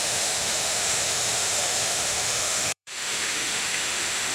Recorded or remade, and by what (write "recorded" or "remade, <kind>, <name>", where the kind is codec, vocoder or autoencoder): remade, autoencoder, DAC-VAE